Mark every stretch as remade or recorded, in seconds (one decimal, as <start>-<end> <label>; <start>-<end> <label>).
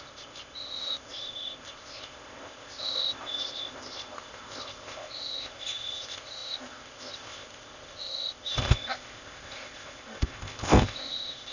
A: 0.0-11.5 remade